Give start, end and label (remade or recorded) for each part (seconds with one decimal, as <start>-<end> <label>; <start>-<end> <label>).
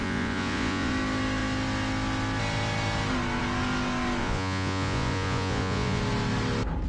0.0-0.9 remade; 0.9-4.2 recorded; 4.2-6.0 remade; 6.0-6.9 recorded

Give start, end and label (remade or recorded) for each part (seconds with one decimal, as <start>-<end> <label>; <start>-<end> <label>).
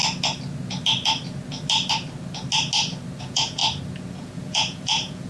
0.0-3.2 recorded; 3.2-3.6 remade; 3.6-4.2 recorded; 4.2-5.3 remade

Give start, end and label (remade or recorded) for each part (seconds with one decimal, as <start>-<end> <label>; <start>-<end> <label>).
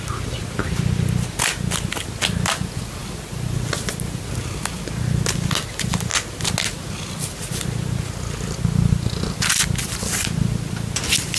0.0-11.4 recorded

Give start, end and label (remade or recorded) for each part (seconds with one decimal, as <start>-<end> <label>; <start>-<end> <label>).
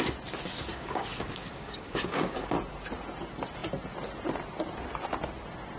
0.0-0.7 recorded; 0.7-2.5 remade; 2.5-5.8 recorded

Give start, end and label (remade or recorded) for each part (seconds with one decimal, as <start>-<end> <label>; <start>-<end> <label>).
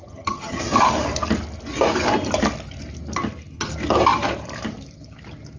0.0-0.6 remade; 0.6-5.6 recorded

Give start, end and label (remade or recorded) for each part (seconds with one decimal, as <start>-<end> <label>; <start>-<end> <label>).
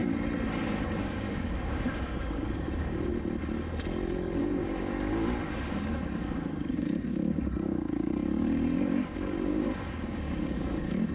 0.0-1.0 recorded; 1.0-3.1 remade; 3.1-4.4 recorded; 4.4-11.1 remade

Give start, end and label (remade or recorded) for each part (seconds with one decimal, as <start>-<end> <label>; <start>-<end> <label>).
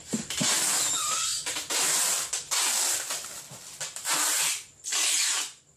0.0-5.8 recorded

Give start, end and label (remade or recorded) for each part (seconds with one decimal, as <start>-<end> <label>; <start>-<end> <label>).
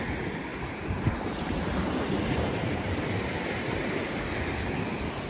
0.0-5.3 remade